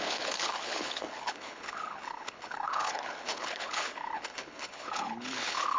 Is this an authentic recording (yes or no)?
no